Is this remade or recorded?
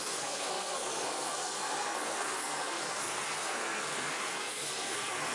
remade